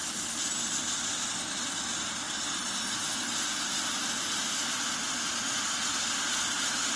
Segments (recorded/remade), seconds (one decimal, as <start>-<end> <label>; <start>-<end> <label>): 0.0-7.0 recorded